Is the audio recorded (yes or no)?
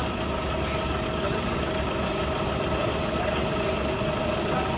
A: yes